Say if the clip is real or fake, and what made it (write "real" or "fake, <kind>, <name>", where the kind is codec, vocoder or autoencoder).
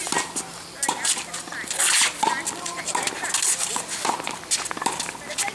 real